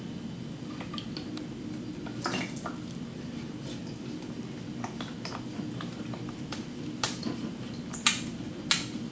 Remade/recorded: recorded